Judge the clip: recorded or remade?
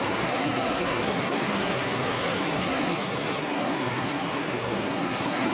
remade